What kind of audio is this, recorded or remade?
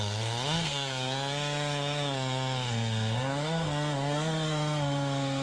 remade